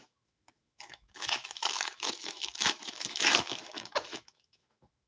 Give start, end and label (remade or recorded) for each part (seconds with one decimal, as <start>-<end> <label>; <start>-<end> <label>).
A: 0.0-5.1 remade